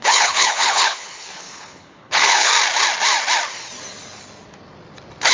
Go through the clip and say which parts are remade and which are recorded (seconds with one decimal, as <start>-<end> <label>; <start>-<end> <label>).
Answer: 0.0-2.5 remade; 2.5-5.3 recorded